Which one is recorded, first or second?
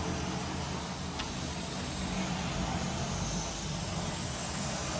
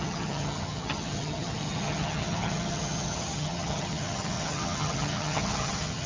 first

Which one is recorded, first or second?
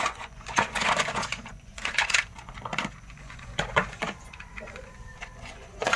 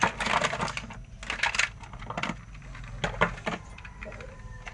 second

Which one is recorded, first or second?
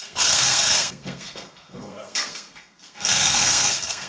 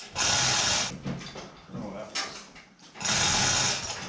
second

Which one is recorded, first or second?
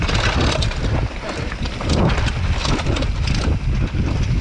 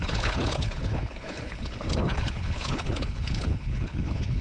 first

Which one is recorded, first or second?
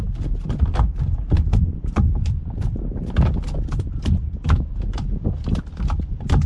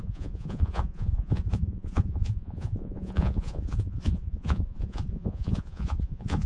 first